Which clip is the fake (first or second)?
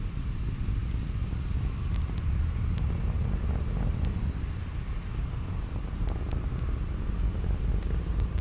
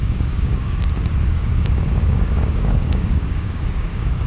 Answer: second